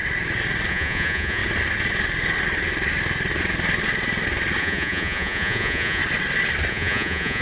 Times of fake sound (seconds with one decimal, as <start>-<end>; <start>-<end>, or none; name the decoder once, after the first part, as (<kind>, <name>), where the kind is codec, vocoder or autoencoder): 0.7-1.4 (vocoder, Vocos); 4.6-6.0; 6.7-7.4